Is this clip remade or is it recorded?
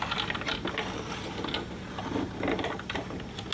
recorded